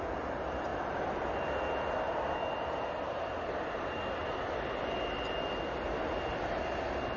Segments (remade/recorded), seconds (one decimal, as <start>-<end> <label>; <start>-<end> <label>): 0.0-7.2 recorded

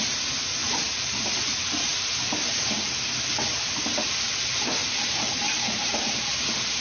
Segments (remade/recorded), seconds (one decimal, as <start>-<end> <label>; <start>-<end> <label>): 0.0-0.6 recorded; 0.6-1.3 remade; 1.3-4.8 recorded; 4.8-6.3 remade; 6.3-6.8 recorded

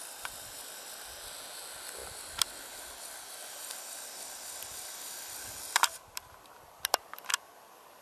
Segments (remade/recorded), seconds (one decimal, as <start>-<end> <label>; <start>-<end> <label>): 0.0-8.0 recorded